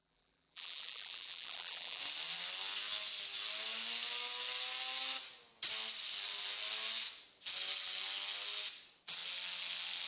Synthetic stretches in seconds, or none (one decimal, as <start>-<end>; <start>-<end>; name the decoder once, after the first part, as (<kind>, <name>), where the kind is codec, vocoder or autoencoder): 0.0-2.0 (vocoder, BigVGAN v2)

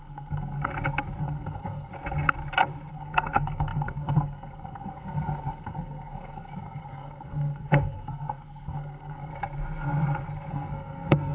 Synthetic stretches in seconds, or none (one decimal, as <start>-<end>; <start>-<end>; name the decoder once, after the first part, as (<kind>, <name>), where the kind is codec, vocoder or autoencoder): 0.0-0.7 (codec, SNAC); 1.2-1.9; 2.9-9.3; 10.5-11.3